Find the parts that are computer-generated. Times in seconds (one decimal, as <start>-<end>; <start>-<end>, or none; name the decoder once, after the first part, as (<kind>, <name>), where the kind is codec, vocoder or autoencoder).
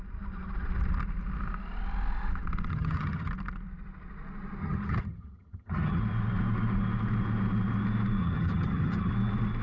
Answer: 2.7-3.3 (vocoder, HiFi-GAN); 4.6-6.0; 8.2-9.1